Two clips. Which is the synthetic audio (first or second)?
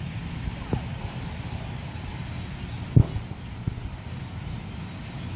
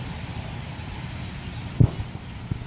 second